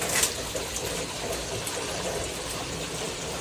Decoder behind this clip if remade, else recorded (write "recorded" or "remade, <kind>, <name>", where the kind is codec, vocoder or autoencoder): remade, vocoder, BigVGAN v2